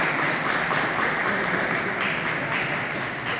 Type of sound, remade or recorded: recorded